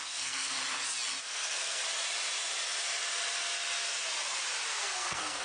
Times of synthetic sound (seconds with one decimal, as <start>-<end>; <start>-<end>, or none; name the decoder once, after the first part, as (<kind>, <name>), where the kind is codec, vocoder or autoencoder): 0.0-0.6 (codec, SNAC); 1.2-1.8; 4.7-5.4